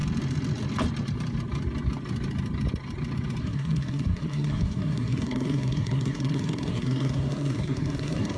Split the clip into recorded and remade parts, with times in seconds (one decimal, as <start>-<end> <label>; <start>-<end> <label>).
0.0-3.4 recorded; 3.4-8.4 remade